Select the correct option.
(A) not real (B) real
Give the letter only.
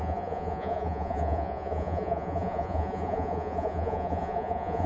A